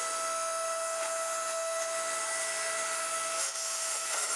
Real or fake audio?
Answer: fake